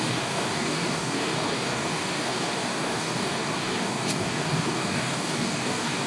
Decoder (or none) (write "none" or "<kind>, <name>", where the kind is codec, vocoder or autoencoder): codec, DAC